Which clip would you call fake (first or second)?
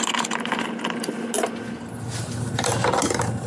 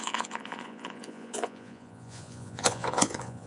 second